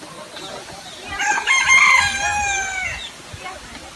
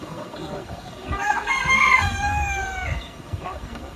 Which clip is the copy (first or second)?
second